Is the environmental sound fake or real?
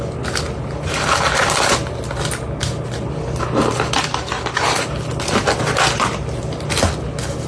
real